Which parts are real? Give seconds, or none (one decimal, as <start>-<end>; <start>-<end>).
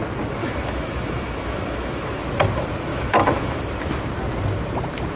0.0-0.4; 2.2-2.9; 3.6-5.2